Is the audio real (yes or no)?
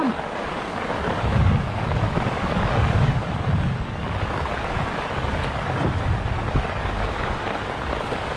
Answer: no